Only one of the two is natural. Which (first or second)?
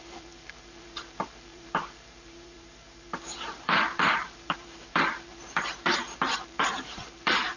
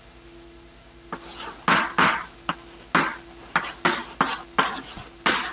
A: second